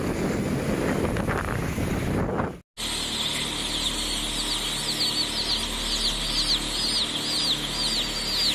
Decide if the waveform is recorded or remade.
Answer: recorded